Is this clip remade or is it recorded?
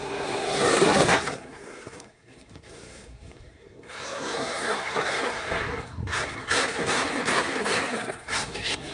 remade